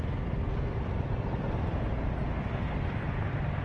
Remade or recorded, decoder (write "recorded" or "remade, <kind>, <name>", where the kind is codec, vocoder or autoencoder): recorded